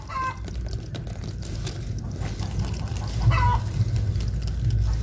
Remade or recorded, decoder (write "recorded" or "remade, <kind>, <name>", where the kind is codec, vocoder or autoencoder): recorded